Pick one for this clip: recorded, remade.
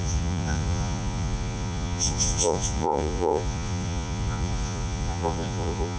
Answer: remade